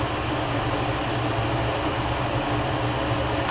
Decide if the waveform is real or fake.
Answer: real